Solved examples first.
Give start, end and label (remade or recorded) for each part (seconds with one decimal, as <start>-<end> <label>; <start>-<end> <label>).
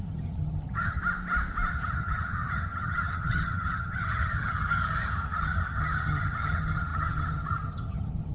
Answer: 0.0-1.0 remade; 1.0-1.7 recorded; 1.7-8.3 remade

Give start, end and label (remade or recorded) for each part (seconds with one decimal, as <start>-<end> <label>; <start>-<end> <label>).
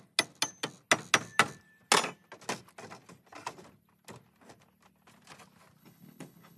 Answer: 0.0-5.8 recorded; 5.8-6.6 remade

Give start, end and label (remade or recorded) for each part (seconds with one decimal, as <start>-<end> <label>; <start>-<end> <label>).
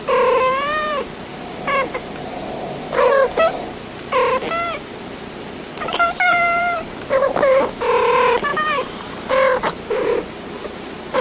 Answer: 0.0-11.2 remade